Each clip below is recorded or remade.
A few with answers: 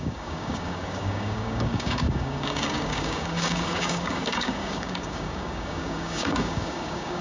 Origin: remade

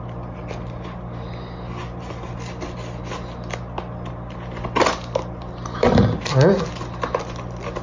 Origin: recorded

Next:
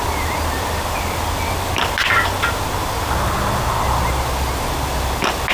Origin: recorded